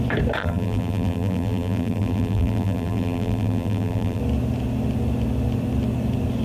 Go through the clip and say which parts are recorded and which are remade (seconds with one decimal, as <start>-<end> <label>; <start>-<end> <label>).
0.0-0.4 recorded; 0.4-4.2 remade; 4.2-6.4 recorded